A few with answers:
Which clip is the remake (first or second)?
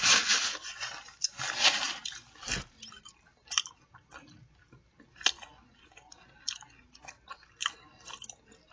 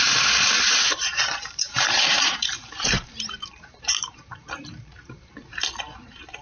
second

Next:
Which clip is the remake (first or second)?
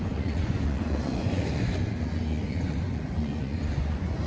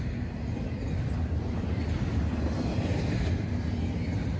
first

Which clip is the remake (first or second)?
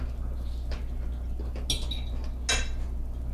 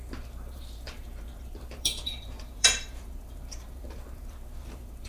second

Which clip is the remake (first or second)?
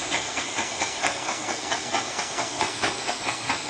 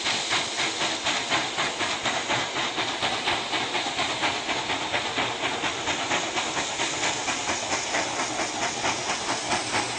first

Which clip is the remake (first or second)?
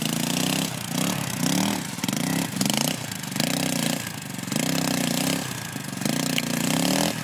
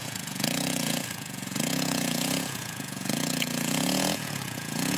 second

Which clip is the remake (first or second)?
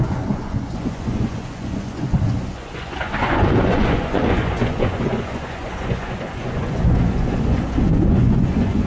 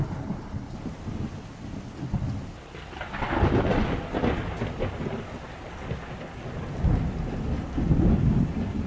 first